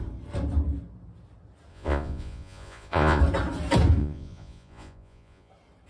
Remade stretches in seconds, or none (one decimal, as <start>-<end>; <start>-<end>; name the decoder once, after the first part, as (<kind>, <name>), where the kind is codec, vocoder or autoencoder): 1.7-3.2 (vocoder, Vocos); 4.0-5.5